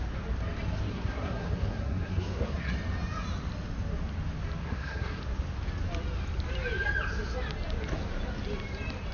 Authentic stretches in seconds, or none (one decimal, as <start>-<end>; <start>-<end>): 0.0-0.9; 2.7-4.6; 5.2-9.1